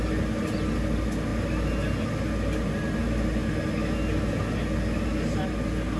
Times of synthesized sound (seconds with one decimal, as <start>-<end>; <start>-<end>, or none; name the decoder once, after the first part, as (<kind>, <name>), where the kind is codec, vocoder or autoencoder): none